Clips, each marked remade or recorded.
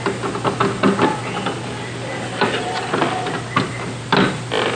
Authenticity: recorded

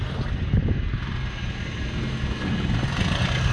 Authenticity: recorded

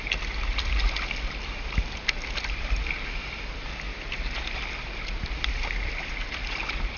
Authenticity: recorded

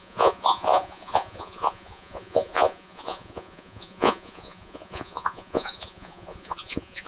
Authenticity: remade